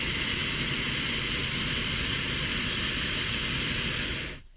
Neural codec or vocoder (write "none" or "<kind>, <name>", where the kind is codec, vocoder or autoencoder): none